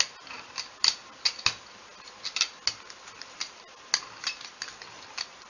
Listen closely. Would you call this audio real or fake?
real